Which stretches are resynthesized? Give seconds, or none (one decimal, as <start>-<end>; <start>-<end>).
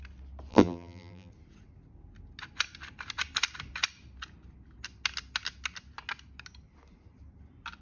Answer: 0.5-1.3